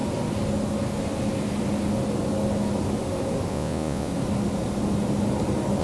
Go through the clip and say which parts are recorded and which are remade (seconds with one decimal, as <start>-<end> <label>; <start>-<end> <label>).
0.0-3.5 recorded; 3.5-4.1 remade; 4.1-5.8 recorded